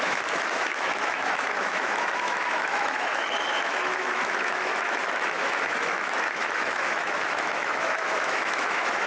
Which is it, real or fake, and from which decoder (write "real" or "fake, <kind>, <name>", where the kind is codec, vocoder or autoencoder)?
fake, autoencoder, DAC-VAE